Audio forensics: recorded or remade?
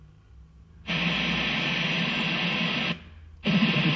recorded